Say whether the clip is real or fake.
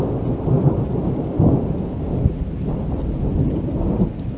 real